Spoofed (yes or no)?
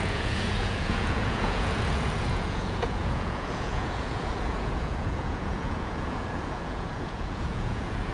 yes